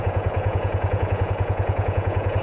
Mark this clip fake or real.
fake